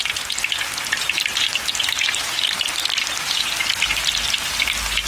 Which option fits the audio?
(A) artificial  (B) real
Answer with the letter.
B